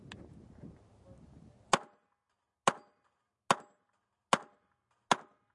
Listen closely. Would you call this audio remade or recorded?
recorded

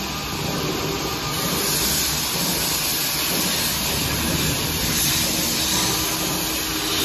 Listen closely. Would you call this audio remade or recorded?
recorded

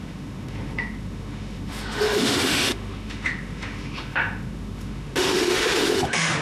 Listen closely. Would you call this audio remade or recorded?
remade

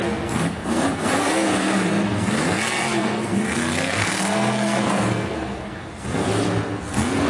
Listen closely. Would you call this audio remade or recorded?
remade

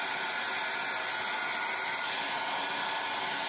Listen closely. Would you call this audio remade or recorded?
recorded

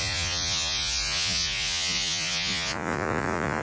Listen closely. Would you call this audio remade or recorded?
remade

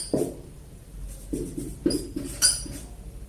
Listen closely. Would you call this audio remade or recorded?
remade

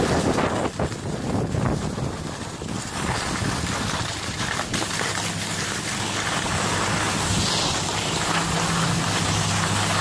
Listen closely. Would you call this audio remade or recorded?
recorded